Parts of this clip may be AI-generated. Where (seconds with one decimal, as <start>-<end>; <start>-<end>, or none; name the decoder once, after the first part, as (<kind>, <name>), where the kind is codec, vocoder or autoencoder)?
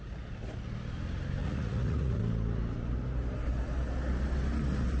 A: 1.4-2.2 (vocoder, Vocos)